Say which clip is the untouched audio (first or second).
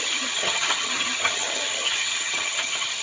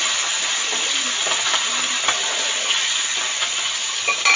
second